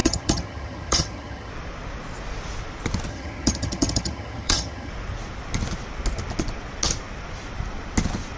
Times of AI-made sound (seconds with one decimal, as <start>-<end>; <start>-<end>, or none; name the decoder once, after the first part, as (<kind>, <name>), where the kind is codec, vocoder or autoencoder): 0.0-1.5 (vocoder, HiFi-GAN); 3.1-4.9

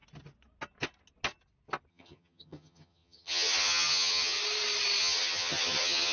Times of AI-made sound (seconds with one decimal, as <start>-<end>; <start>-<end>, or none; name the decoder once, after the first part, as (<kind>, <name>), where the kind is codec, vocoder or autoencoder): 1.9-4.4 (vocoder, HiFi-GAN); 5.0-6.1

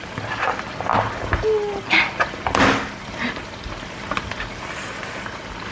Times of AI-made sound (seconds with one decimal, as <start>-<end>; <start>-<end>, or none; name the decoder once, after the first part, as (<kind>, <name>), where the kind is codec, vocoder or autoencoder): none